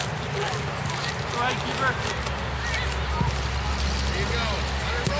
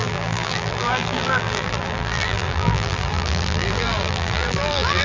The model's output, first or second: second